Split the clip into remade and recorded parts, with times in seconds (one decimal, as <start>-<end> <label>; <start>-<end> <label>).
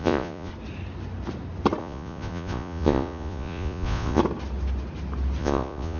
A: 0.0-0.5 remade; 0.5-1.8 recorded; 1.8-4.2 remade; 4.2-5.4 recorded; 5.4-6.0 remade